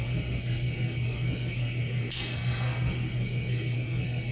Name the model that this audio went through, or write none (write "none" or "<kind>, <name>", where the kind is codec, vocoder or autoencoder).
codec, SNAC